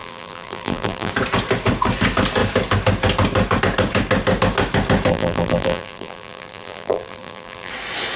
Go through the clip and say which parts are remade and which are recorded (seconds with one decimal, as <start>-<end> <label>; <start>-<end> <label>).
0.0-1.1 remade; 1.1-5.1 recorded; 5.1-7.7 remade; 7.7-8.2 recorded